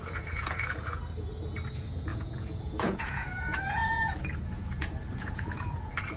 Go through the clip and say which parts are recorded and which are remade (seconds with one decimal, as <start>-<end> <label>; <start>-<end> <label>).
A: 0.0-1.0 remade; 1.0-1.7 recorded; 1.7-6.2 remade